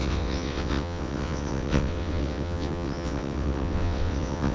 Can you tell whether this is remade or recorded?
remade